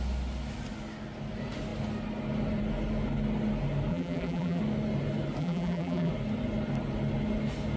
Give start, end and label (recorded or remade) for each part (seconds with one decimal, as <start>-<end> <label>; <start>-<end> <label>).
0.0-3.9 recorded; 3.9-4.6 remade; 4.6-5.4 recorded; 5.4-6.1 remade; 6.1-7.8 recorded